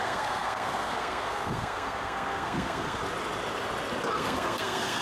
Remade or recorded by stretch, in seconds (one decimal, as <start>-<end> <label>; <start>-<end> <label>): 0.0-3.0 remade; 3.0-4.1 recorded; 4.1-5.0 remade